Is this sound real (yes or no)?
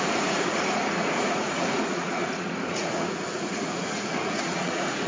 no